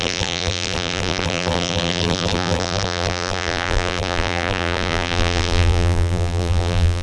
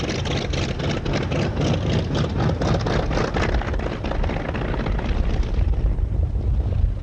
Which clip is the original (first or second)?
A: second